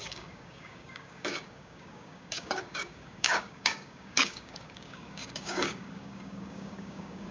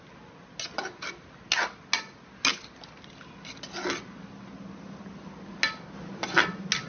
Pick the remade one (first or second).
first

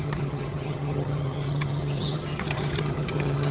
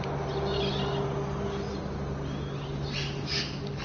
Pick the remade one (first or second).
first